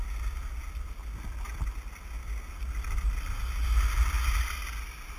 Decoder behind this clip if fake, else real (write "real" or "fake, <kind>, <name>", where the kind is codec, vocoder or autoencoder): real